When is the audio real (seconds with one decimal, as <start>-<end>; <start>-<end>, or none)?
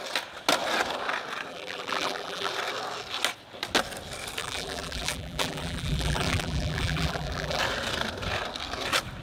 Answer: 0.0-1.5; 2.5-4.4; 7.6-9.2